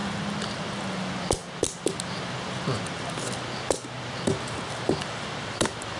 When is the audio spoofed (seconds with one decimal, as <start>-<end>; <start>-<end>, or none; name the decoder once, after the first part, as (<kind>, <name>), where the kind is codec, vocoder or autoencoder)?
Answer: none

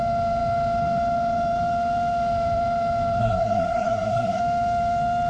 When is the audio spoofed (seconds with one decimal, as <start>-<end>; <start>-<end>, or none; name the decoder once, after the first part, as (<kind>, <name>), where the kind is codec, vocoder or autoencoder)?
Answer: 3.2-4.4 (codec, SNAC)

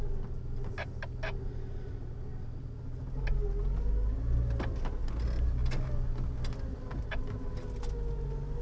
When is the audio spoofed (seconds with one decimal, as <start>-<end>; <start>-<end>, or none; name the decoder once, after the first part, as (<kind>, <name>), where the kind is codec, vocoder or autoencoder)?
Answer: none

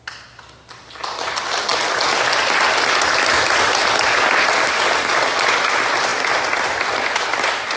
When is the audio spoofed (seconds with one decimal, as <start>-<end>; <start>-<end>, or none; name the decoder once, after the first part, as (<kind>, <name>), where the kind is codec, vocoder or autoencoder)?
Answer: none